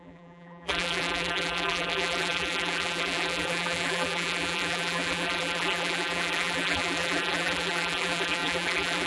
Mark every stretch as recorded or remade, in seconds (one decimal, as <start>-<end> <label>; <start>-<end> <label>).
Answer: 0.0-9.1 remade